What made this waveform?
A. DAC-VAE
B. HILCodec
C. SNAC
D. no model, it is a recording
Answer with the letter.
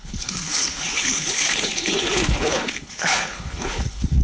B